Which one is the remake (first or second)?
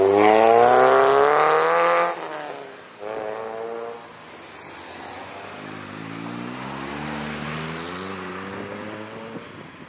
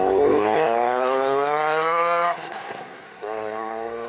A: second